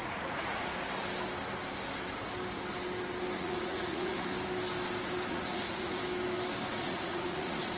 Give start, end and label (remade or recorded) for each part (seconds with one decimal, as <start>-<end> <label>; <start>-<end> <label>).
0.0-0.7 remade; 0.7-3.4 recorded; 3.4-4.3 remade; 4.3-5.3 recorded; 5.3-6.0 remade; 6.0-6.7 recorded; 6.7-7.8 remade

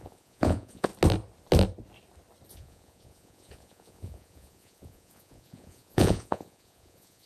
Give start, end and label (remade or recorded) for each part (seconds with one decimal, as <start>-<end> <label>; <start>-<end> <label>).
0.0-0.9 remade; 0.9-2.5 recorded; 2.5-7.3 remade